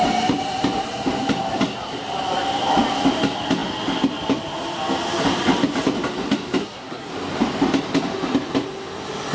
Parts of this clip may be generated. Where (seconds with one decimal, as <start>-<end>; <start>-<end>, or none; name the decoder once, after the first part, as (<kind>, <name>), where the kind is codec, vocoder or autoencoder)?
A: 6.6-7.1 (codec, SNAC)